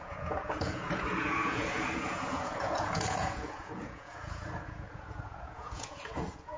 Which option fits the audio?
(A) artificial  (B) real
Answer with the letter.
A